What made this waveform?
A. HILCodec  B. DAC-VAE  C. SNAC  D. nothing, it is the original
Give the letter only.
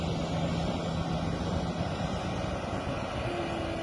D